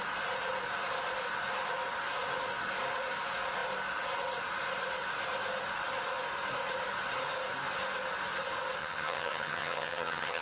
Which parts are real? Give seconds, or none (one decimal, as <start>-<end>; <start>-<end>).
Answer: 0.0-8.8